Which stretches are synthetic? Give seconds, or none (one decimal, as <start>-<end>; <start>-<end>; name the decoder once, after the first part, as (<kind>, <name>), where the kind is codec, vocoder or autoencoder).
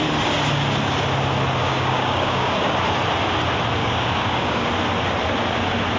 1.6-2.6 (codec, DAC); 3.8-4.7